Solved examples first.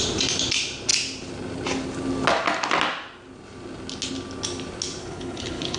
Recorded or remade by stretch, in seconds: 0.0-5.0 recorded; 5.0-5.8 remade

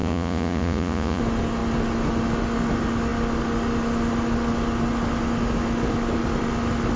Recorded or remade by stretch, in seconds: 0.0-1.2 remade; 1.2-7.0 recorded

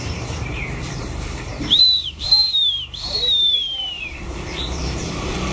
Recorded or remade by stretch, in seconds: 0.0-5.5 remade

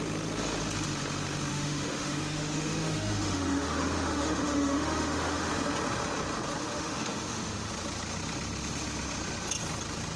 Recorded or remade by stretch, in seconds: 0.0-1.5 recorded; 1.5-5.5 remade; 5.5-6.6 recorded; 6.6-7.7 remade; 7.7-10.2 recorded